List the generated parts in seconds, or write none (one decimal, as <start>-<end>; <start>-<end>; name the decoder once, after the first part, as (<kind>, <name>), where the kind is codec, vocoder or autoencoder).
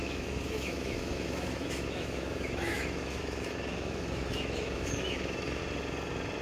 0.0-5.6 (autoencoder, DAC-VAE)